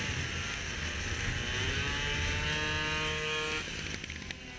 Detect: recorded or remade recorded